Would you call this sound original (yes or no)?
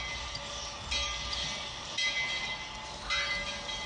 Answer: yes